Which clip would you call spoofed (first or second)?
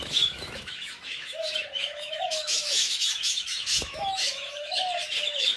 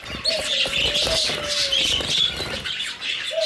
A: first